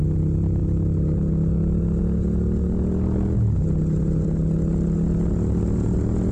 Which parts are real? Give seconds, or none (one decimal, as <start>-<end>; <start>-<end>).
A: 0.0-6.3